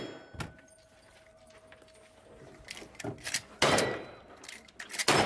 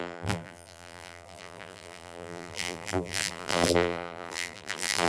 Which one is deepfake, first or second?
second